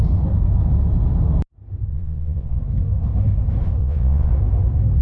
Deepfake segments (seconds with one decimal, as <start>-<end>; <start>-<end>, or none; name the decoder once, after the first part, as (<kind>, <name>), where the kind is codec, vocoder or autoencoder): 1.9-2.6 (vocoder, Vocos); 3.8-4.3

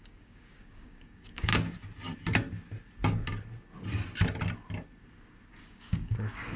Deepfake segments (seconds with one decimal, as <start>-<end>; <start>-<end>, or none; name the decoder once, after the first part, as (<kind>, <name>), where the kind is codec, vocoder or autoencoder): 0.0-1.5 (codec, DAC); 5.5-6.6